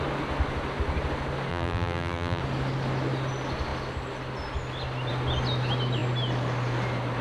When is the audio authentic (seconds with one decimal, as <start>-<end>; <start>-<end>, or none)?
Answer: 0.0-1.5; 2.4-7.2